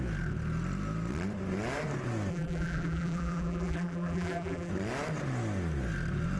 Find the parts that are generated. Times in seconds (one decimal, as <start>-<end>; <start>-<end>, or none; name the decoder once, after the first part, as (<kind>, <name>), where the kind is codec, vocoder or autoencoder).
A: 2.3-4.7 (vocoder, BigVGAN v2)